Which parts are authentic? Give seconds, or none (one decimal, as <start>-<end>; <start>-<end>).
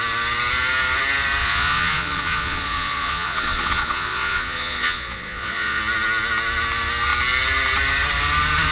0.0-1.4; 5.8-8.7